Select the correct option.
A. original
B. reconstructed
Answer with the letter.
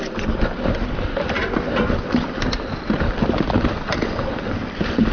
A